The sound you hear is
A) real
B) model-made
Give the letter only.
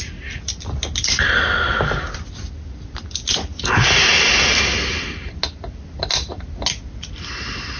A